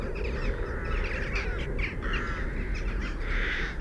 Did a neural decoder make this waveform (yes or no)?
no